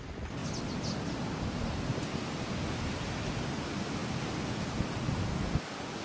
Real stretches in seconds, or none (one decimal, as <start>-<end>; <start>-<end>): 0.0-6.0